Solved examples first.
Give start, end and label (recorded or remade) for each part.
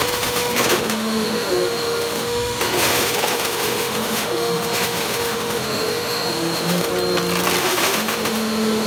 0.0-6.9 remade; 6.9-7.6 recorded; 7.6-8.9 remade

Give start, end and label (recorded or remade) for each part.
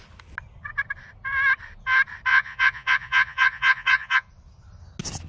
0.0-2.3 recorded; 2.3-4.3 remade; 4.3-5.3 recorded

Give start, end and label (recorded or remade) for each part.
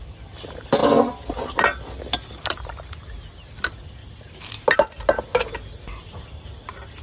0.0-7.0 recorded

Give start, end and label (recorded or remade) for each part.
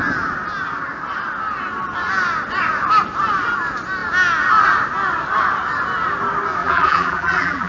0.0-6.6 recorded; 6.6-7.7 remade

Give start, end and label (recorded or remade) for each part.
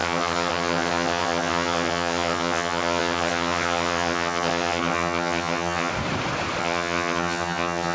0.0-5.9 remade; 5.9-6.6 recorded; 6.6-7.9 remade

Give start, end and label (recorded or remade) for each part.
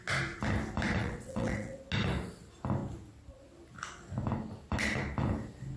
0.0-1.0 recorded; 1.0-1.8 remade; 1.8-5.8 recorded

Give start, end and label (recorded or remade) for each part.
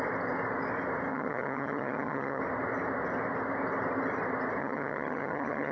0.0-1.1 recorded; 1.1-2.4 remade; 2.4-4.6 recorded; 4.6-5.7 remade